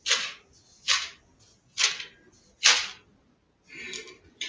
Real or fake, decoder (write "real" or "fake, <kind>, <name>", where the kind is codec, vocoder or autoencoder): real